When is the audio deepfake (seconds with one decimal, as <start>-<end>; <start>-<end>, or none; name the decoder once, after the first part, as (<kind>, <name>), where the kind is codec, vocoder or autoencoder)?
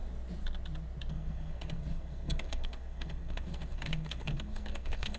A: 1.1-5.2 (codec, SNAC)